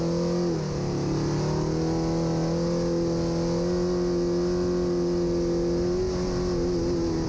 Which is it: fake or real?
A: real